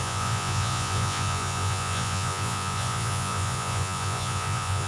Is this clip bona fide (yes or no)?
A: no